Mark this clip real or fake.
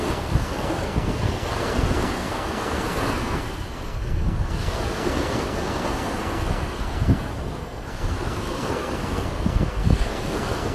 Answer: fake